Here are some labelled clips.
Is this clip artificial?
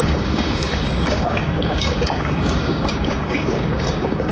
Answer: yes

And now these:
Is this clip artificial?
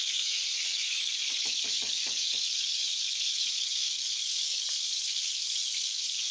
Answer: yes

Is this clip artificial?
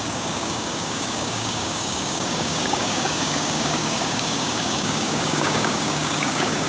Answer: yes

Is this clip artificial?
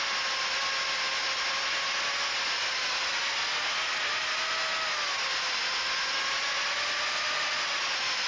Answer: no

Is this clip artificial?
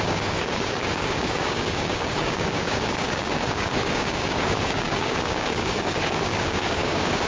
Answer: yes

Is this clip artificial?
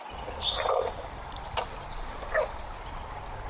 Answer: no